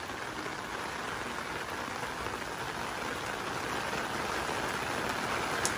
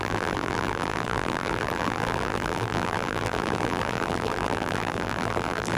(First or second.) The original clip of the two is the first